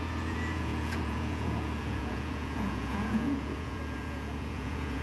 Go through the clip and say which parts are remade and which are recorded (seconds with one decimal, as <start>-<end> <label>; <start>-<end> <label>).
0.0-5.0 remade